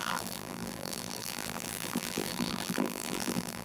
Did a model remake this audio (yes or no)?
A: yes